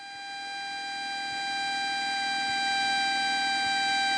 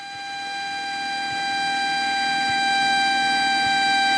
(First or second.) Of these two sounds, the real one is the first